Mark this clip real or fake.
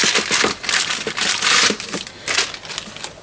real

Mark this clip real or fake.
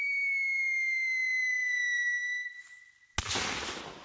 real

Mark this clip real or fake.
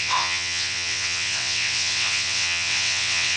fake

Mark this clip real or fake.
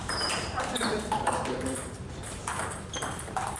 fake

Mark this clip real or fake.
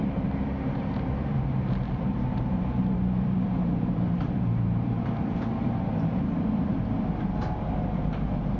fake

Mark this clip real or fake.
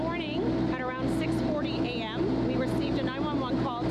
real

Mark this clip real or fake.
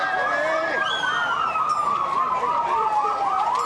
real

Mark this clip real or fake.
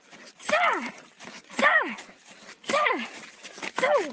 real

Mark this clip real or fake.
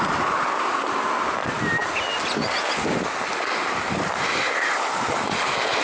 real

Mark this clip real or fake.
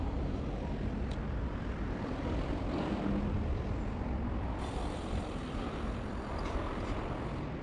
fake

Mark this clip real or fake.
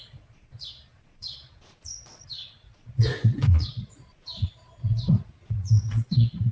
fake